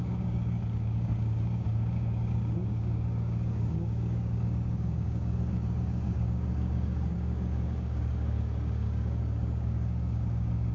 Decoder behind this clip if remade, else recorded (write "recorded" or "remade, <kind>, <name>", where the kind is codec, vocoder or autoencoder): remade, codec, DAC